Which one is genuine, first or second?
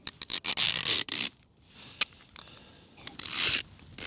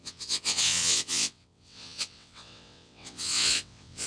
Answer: first